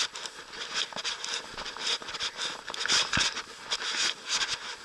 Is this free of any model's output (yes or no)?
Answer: yes